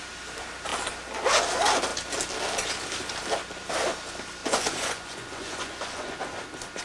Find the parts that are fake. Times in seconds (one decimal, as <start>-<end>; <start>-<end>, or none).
4.4-6.2